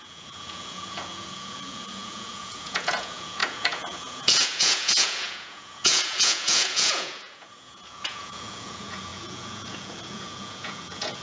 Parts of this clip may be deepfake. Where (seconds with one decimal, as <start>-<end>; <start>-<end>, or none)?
0.0-11.2